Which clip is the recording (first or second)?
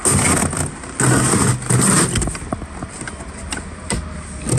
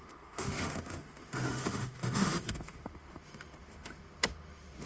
first